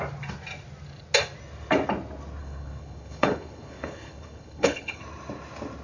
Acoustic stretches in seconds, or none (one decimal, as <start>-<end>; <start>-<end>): 0.0-2.4; 5.0-5.8